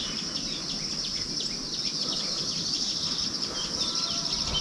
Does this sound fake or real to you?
real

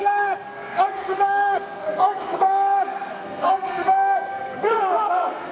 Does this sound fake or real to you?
fake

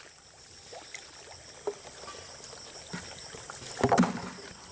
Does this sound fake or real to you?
real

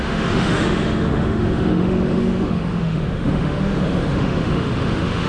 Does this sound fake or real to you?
fake